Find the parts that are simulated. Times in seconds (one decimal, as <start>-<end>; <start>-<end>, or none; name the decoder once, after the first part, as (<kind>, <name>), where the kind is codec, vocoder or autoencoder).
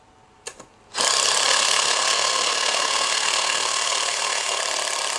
1.5-4.6 (codec, SNAC)